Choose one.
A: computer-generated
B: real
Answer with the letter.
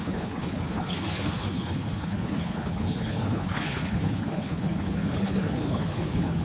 A